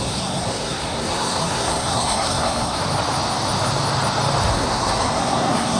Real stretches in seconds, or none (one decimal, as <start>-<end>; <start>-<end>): 2.8-4.5